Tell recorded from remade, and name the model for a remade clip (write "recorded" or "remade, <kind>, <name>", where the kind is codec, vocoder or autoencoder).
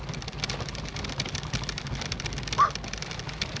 recorded